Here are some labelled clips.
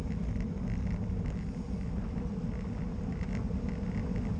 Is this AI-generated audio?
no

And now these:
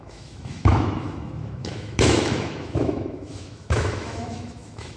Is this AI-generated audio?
yes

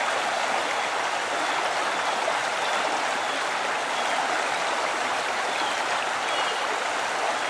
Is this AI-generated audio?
no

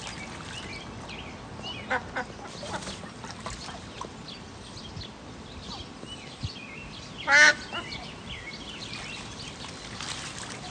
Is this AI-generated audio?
no